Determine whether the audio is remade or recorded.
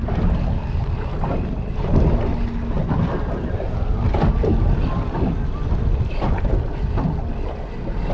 recorded